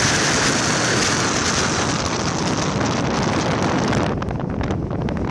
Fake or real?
real